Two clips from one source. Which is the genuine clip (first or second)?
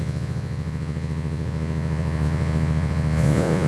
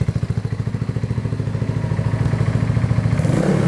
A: second